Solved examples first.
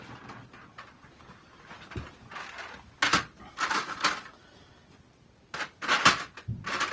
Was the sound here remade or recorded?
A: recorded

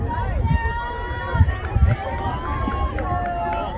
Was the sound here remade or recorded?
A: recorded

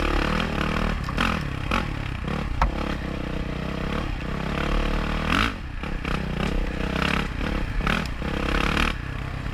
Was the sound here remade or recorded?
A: recorded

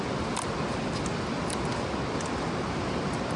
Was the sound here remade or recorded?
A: recorded